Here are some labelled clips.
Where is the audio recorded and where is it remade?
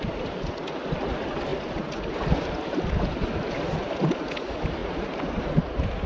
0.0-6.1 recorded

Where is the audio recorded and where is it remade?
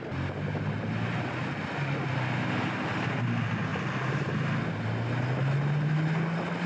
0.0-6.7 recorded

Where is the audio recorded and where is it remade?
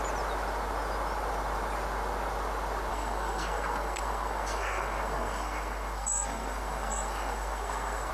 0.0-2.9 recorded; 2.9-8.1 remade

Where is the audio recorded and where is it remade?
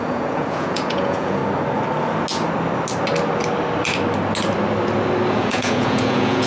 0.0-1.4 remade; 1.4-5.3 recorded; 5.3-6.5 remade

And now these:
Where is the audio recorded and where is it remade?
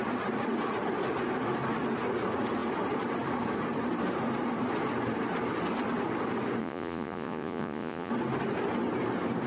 0.0-6.6 recorded; 6.6-8.1 remade; 8.1-9.5 recorded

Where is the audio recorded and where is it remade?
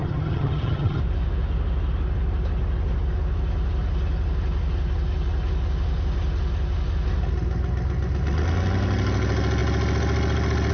0.0-1.0 remade; 1.0-10.7 recorded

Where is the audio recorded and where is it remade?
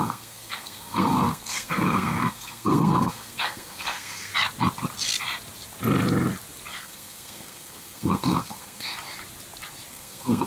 0.0-4.3 remade; 4.3-6.8 recorded; 6.8-8.9 remade; 8.9-9.9 recorded; 9.9-10.5 remade